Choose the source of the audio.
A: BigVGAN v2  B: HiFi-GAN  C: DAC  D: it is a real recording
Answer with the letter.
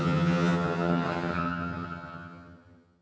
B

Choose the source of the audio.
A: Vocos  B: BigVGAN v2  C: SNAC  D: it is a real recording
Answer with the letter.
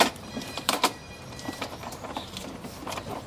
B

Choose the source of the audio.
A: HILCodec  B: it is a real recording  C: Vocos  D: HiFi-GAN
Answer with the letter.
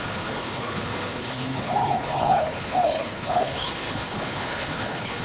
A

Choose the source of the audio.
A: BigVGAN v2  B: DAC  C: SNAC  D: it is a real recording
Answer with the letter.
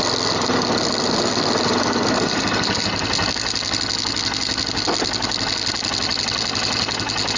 D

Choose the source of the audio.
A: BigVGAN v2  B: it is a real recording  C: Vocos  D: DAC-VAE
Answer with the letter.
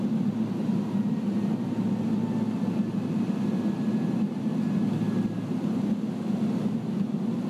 B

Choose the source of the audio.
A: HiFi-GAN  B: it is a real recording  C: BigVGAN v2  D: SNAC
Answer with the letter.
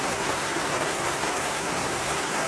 D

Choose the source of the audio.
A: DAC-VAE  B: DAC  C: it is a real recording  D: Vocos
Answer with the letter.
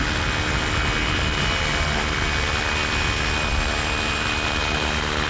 C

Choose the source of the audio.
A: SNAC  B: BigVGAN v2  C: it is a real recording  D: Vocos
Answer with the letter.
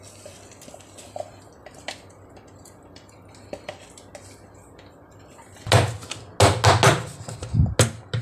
C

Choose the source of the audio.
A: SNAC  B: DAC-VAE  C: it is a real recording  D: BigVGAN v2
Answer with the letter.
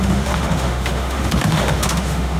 B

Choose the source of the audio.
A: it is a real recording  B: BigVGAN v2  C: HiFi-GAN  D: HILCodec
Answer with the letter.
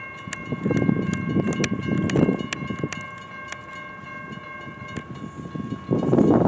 A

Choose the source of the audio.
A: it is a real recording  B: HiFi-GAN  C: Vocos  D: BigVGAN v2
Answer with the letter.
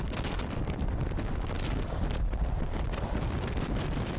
D